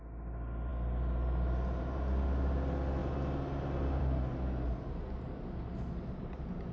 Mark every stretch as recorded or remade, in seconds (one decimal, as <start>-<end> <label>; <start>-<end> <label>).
0.0-6.7 recorded

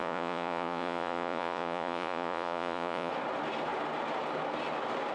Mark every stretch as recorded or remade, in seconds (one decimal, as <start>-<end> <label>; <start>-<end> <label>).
0.0-3.1 remade; 3.1-5.1 recorded

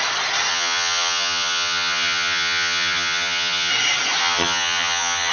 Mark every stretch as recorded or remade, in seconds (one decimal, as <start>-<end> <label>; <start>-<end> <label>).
0.0-0.5 recorded; 0.5-3.7 remade; 3.7-4.2 recorded; 4.2-5.3 remade

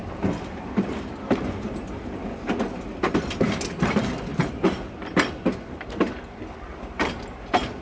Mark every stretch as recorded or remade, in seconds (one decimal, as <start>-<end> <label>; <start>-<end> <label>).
0.0-4.3 recorded; 4.3-4.8 remade; 4.8-6.7 recorded; 6.7-7.2 remade; 7.2-7.8 recorded

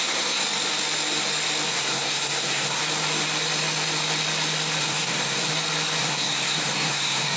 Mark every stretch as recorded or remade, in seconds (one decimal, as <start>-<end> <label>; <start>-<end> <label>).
0.0-0.4 remade; 0.4-1.7 recorded; 1.7-2.8 remade; 2.8-4.8 recorded; 4.8-5.5 remade; 5.5-6.0 recorded; 6.0-7.4 remade

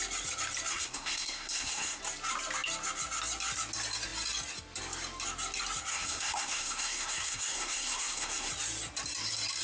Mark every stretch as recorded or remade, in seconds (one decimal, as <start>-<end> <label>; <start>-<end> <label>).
0.0-0.7 recorded; 0.7-2.0 remade; 2.0-5.9 recorded; 5.9-8.5 remade; 8.5-9.6 recorded

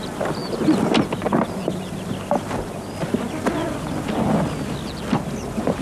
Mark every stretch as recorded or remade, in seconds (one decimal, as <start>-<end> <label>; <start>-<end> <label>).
0.0-5.8 recorded